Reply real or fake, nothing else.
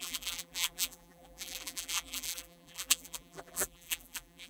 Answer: fake